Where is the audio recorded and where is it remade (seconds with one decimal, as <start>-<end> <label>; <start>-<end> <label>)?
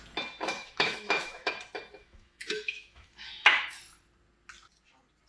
0.0-0.5 recorded; 0.5-1.5 remade; 1.5-2.0 recorded; 2.0-3.8 remade; 3.8-5.3 recorded